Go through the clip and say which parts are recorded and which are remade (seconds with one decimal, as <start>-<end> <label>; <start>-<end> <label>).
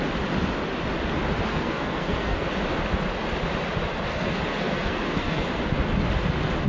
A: 0.0-1.5 recorded; 1.5-2.5 remade; 2.5-4.1 recorded; 4.1-5.6 remade; 5.6-6.7 recorded